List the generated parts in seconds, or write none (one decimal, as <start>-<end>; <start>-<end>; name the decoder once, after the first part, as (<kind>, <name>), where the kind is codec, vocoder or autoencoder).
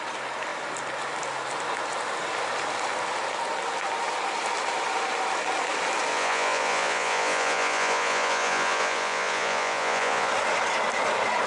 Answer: 6.1-10.3 (vocoder, Vocos)